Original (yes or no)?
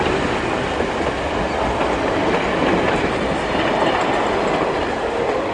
yes